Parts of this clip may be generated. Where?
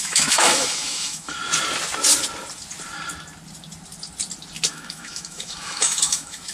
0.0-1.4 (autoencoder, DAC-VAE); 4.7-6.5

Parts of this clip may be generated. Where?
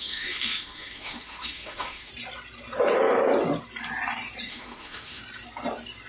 0.0-2.1 (autoencoder, DAC-VAE); 4.5-5.2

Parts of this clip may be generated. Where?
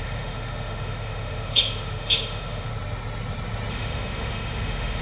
0.0-2.7 (autoencoder, DAC-VAE); 3.7-5.0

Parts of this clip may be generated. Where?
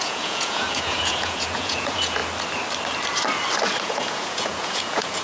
0.0-2.2 (vocoder, Vocos); 3.8-5.2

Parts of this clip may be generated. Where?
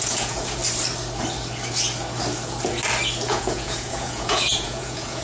0.0-0.6 (vocoder, Vocos); 3.3-5.2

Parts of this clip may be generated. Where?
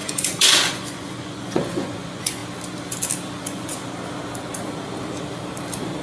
0.0-2.4 (vocoder, Vocos); 3.4-3.8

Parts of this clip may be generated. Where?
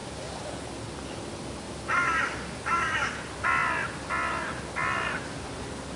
none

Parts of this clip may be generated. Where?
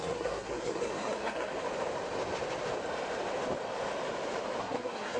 0.0-1.5 (codec, SNAC); 4.6-5.2